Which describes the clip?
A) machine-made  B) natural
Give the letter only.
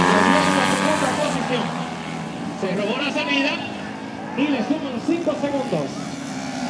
A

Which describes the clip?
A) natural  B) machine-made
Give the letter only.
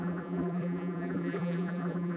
B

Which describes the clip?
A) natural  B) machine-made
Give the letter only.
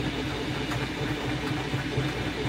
A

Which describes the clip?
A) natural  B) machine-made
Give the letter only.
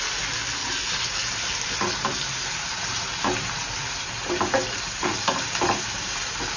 B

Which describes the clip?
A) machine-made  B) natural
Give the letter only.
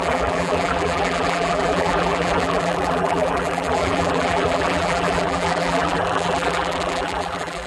A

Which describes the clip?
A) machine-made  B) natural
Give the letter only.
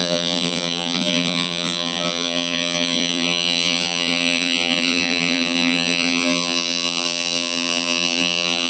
A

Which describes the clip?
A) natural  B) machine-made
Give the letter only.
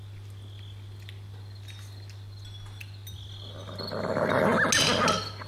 A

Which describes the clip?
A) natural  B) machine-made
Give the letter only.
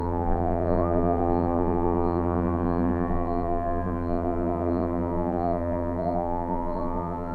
B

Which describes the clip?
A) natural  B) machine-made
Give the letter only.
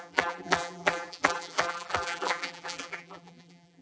B